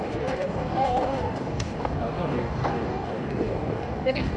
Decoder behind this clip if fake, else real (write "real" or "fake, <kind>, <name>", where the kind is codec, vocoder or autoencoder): fake, codec, DAC